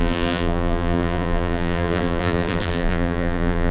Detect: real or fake fake